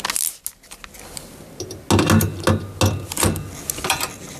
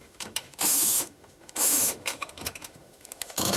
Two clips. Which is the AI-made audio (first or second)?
second